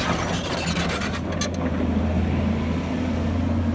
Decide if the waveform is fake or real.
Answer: real